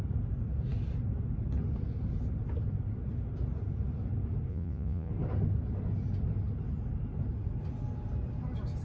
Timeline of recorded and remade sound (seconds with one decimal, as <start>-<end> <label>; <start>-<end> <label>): 0.0-4.5 recorded; 4.5-5.1 remade; 5.1-8.8 recorded